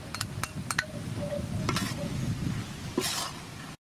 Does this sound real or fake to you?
real